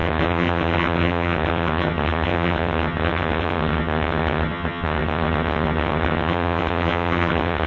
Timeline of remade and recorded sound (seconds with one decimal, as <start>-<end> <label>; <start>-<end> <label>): 0.0-7.7 remade